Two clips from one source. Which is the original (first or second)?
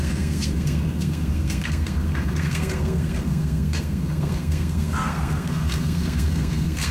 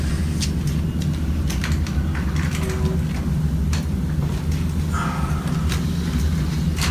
second